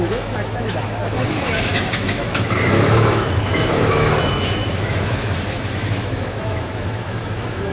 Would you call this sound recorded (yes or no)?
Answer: no